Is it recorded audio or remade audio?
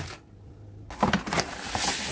recorded